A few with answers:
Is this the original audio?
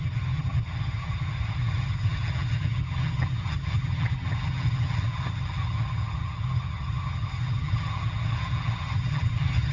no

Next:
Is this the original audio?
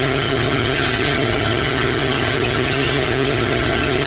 no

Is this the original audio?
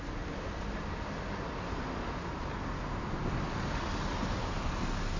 yes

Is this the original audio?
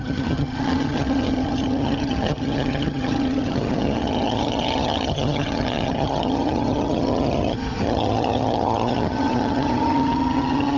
no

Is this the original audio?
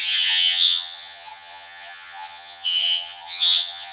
no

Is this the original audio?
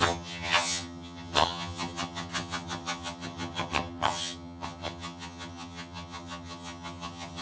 no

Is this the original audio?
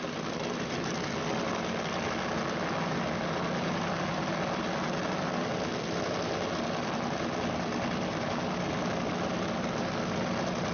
yes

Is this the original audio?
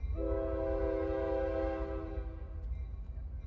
yes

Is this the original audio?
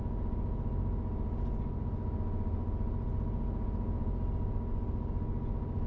yes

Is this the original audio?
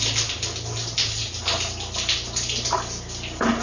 yes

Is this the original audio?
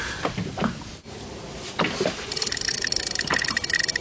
yes